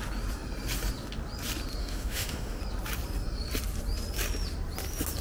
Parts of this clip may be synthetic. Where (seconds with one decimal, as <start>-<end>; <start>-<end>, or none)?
1.8-2.6